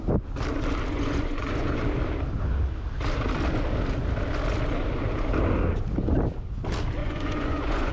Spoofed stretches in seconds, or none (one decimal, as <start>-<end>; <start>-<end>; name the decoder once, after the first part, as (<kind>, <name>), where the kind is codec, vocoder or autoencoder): 0.9-1.8 (vocoder, Vocos); 7.0-7.9